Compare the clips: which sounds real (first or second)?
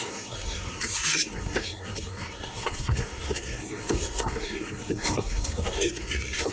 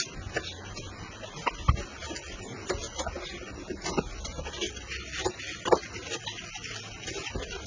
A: second